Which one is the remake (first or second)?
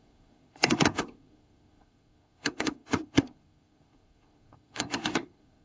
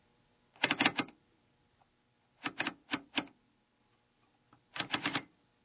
first